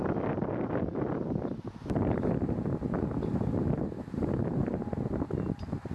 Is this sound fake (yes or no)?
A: no